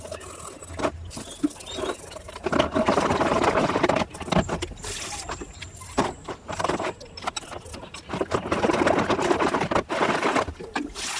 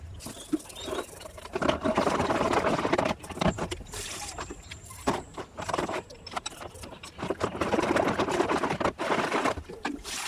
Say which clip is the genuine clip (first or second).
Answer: first